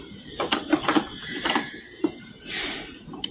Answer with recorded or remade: remade